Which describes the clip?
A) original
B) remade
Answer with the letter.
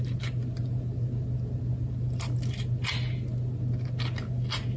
A